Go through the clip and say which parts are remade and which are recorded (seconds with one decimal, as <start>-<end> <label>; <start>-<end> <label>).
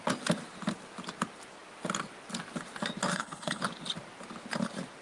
0.0-3.1 recorded; 3.1-3.6 remade; 3.6-5.0 recorded